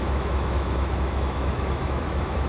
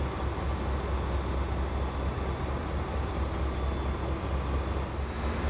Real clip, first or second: second